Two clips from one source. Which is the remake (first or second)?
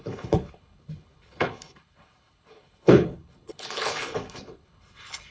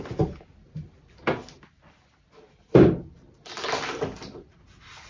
first